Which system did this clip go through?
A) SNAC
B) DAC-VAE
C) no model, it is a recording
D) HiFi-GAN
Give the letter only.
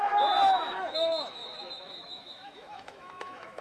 B